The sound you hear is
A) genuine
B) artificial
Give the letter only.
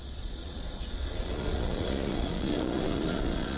B